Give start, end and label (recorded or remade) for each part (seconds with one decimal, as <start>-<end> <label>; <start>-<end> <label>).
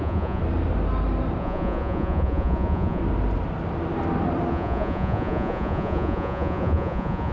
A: 0.0-0.4 remade; 0.4-1.4 recorded; 1.4-3.0 remade; 3.0-4.5 recorded; 4.5-7.3 remade